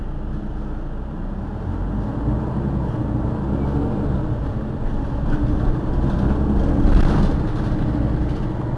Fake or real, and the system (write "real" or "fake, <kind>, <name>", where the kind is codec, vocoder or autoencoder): real